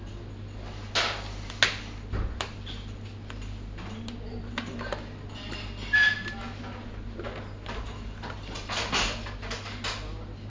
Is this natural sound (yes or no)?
yes